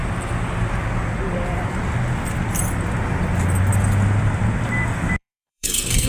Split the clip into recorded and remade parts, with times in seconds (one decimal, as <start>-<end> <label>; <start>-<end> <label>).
0.0-5.2 recorded; 5.2-6.1 remade